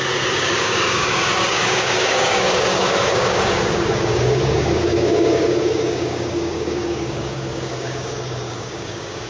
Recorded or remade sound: remade